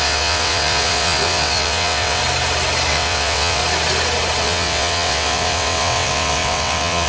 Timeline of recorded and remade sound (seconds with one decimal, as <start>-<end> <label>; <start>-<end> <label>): 0.0-2.2 remade; 2.2-2.9 recorded; 2.9-3.6 remade; 3.6-4.4 recorded; 4.4-7.1 remade